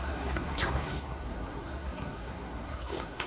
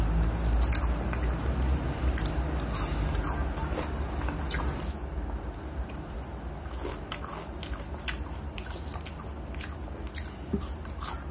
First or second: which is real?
second